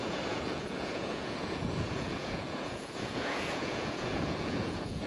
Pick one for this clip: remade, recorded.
remade